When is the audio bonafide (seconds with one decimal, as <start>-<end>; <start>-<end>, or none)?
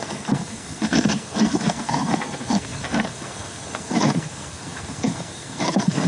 none